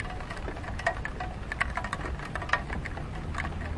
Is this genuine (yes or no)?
yes